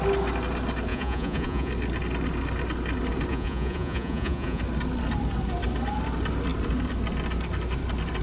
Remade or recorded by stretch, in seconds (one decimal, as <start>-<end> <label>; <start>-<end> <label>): 0.0-0.9 recorded; 0.9-1.7 remade; 1.7-3.3 recorded; 3.3-4.6 remade; 4.6-8.2 recorded